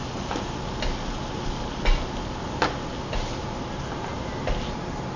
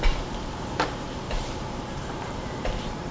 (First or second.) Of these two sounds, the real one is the first